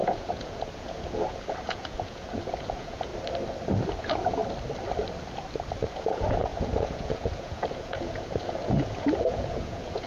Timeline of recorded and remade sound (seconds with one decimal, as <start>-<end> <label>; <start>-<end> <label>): 0.0-3.1 remade; 3.1-4.0 recorded; 4.0-4.4 remade; 4.4-5.9 recorded; 5.9-10.1 remade